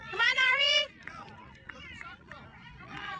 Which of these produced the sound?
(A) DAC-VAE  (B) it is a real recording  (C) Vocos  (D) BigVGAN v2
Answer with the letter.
C